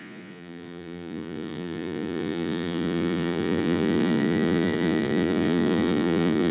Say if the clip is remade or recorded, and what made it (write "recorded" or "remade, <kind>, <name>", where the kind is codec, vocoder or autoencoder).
remade, vocoder, Vocos